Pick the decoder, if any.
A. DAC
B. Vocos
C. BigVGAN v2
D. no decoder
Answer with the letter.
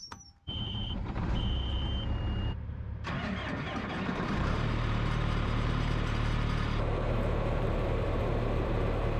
C